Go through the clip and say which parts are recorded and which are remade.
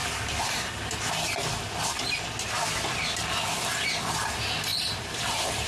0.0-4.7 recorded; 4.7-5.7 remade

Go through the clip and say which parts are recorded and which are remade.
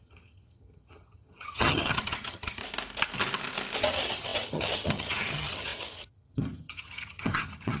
0.0-2.6 remade; 2.6-3.8 recorded; 3.8-7.8 remade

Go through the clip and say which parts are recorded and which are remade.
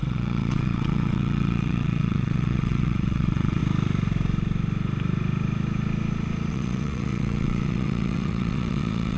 0.0-3.6 remade; 3.6-6.5 recorded; 6.5-9.2 remade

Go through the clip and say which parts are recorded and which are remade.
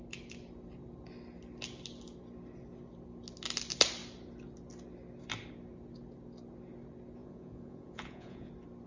0.0-7.2 recorded; 7.2-8.5 remade; 8.5-8.9 recorded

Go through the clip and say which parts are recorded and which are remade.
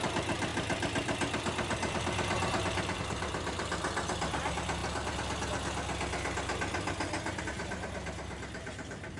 0.0-4.8 remade; 4.8-7.4 recorded; 7.4-9.2 remade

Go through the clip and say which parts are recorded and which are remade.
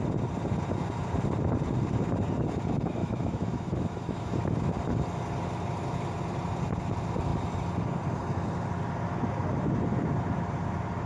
0.0-3.0 recorded; 3.0-4.7 remade; 4.7-11.1 recorded